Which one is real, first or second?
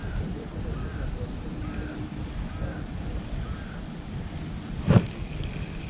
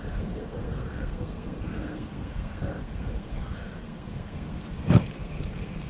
first